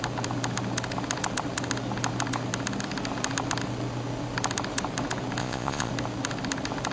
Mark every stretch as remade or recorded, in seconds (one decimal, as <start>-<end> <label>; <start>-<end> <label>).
0.0-5.4 recorded; 5.4-5.9 remade; 5.9-6.9 recorded